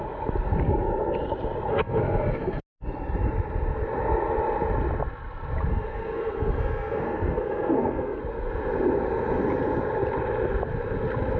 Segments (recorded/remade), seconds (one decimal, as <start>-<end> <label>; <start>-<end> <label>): 0.0-1.7 recorded; 1.7-2.6 remade; 2.6-5.7 recorded; 5.7-8.2 remade; 8.2-11.4 recorded